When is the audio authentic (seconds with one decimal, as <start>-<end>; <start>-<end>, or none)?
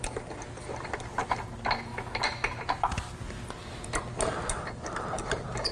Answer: 0.0-5.7